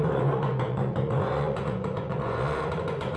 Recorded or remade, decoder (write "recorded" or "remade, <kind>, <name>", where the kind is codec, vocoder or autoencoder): remade, vocoder, Vocos